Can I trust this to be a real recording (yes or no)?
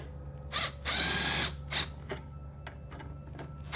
yes